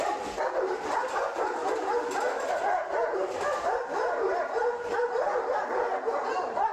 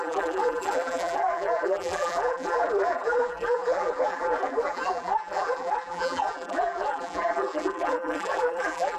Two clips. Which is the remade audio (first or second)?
second